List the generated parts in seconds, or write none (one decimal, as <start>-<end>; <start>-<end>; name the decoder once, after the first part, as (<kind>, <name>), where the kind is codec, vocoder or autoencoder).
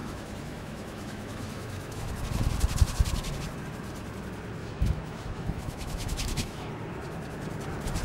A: 0.0-2.1 (autoencoder, DAC-VAE); 4.6-6.7